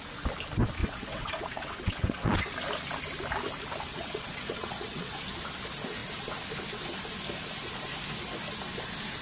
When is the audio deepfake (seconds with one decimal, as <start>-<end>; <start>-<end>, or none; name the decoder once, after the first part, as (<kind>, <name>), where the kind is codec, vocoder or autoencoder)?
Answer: 0.8-2.5 (vocoder, WaveNeXt); 3.9-5.2